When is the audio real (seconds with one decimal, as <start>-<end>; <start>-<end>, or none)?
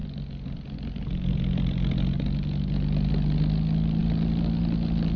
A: 0.0-5.2